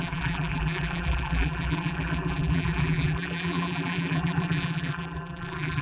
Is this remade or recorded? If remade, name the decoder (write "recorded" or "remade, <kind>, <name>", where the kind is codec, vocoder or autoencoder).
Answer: remade, vocoder, BigVGAN v2